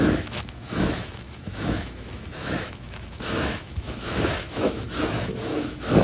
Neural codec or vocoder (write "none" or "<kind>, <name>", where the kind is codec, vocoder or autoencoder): autoencoder, DAC-VAE